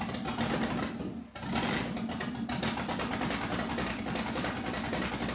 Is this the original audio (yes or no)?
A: yes